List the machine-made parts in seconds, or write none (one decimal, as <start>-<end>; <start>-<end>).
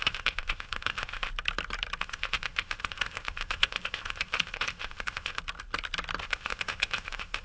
0.0-1.3; 2.0-5.4; 6.2-7.4